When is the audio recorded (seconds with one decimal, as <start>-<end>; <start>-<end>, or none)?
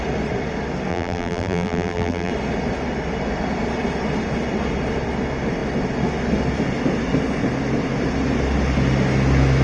0.0-0.9; 2.3-9.6